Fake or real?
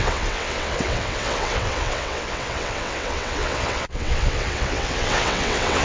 fake